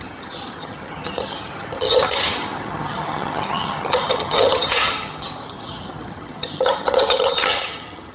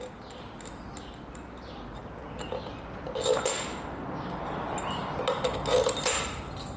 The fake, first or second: first